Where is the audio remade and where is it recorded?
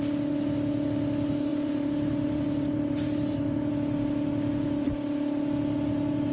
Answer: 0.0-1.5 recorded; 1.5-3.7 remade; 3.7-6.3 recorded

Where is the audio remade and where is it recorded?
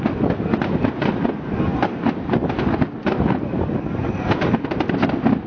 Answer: 0.0-1.7 recorded; 1.7-4.0 remade; 4.0-5.5 recorded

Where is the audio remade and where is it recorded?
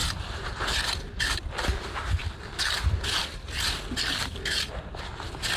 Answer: 0.0-0.8 remade; 0.8-5.6 recorded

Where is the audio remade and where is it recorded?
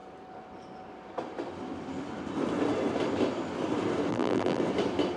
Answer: 0.0-4.1 recorded; 4.1-4.6 remade; 4.6-5.2 recorded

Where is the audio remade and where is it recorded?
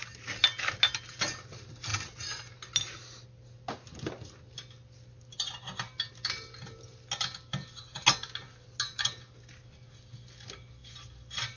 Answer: 0.0-11.6 recorded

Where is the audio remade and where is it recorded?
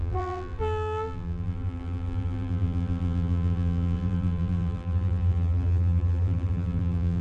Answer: 0.0-7.2 remade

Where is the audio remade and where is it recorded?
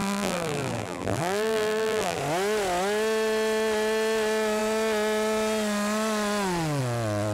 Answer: 0.0-2.2 remade; 2.2-7.3 recorded